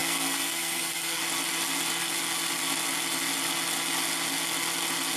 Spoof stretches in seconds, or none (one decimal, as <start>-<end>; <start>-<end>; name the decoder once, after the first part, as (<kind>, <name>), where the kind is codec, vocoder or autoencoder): 0.0-1.2 (codec, SNAC)

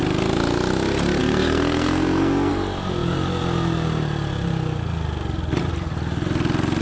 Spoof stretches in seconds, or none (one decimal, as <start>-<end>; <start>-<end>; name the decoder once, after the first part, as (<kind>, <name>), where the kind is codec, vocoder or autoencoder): 1.2-2.5 (codec, SNAC)

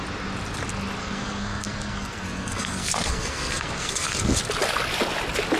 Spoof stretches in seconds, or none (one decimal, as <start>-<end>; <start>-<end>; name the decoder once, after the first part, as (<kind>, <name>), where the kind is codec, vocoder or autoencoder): 1.0-4.4 (codec, SNAC)

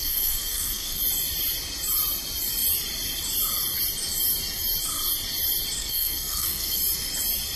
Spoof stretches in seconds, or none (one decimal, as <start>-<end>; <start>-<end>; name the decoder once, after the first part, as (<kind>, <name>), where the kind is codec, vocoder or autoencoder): 0.0-1.0 (codec, SNAC); 5.8-6.8